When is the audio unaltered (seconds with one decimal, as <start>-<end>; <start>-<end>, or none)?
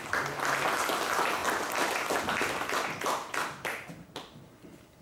0.0-1.4; 3.9-5.0